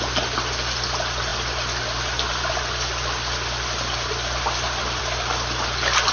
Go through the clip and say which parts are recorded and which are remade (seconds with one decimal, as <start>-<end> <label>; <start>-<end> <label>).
0.0-6.1 recorded